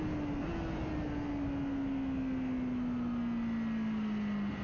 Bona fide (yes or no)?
yes